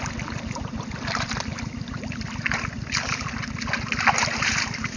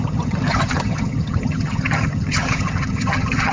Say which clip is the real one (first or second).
first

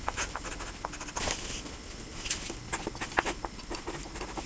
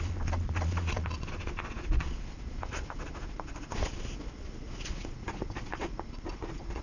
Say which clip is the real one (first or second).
first